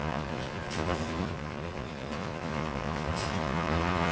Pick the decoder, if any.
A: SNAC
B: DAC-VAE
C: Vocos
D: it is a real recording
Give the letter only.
C